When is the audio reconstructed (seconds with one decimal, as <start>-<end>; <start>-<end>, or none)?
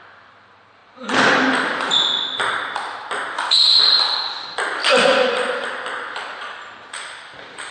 0.0-7.7